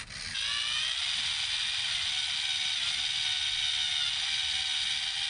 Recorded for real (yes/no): yes